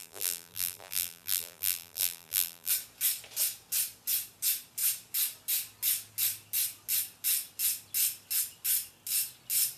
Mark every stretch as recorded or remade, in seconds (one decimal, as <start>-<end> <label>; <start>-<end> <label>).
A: 0.0-2.7 remade; 2.7-9.8 recorded